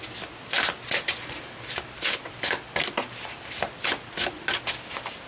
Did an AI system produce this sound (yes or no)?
no